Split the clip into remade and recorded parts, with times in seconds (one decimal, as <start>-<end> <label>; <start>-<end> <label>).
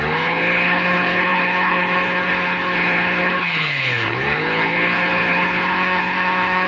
0.0-6.7 remade